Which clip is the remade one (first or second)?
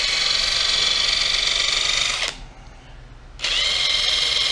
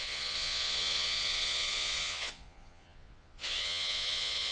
second